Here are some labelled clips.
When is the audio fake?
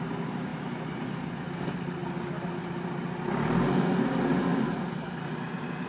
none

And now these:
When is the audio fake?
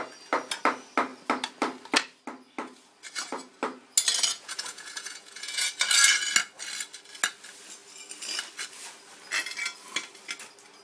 4.3-5.7 (vocoder, Vocos)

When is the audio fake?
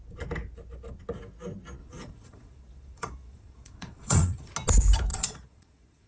1.8-4.5 (vocoder, Vocos); 5.1-6.1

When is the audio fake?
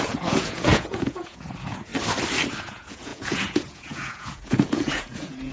0.0-1.9 (vocoder, Vocos); 2.6-5.5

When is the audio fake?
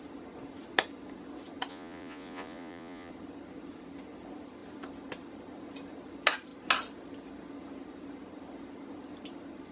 1.7-3.1 (vocoder, Vocos)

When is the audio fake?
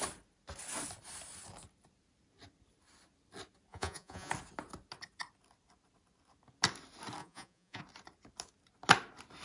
3.7-4.3 (vocoder, Vocos); 7.2-7.8